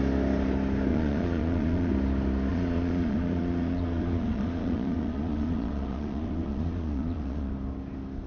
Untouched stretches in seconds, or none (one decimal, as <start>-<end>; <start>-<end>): 0.0-0.9; 1.9-2.5; 7.5-8.3